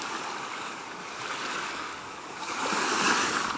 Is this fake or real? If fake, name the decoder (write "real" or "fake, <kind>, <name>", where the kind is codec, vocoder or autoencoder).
fake, codec, DAC